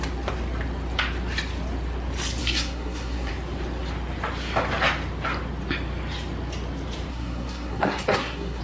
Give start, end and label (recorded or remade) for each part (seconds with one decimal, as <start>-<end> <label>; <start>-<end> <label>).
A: 0.0-2.4 recorded; 2.4-3.3 remade; 3.3-7.1 recorded; 7.1-8.6 remade

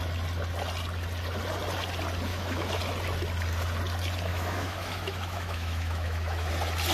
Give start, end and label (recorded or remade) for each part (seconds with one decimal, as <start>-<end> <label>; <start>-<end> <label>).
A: 0.0-2.3 recorded; 2.3-2.8 remade; 2.8-4.3 recorded; 4.3-6.5 remade; 6.5-6.9 recorded

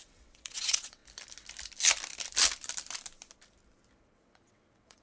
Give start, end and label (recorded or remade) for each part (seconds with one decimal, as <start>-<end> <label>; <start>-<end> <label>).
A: 0.0-1.0 remade; 1.0-4.0 recorded; 4.0-5.0 remade

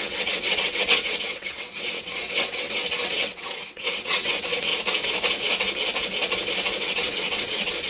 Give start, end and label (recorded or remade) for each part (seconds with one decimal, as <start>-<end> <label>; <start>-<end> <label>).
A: 0.0-4.7 remade; 4.7-6.8 recorded; 6.8-7.9 remade

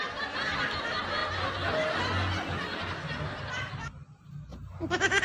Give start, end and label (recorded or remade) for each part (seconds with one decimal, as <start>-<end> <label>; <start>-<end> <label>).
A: 0.0-5.2 recorded

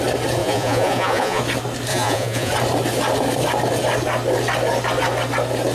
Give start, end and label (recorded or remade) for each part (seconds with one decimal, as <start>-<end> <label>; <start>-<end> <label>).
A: 0.0-0.4 recorded; 0.4-1.4 remade; 1.4-1.9 recorded; 1.9-2.5 remade; 2.5-5.7 recorded

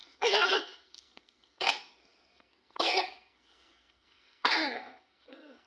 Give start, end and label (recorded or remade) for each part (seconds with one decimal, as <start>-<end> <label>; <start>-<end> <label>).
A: 0.0-5.7 remade

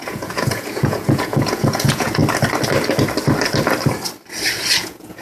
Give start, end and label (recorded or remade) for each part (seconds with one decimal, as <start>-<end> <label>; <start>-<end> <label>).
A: 0.0-2.2 remade; 2.2-4.8 recorded; 4.8-5.2 remade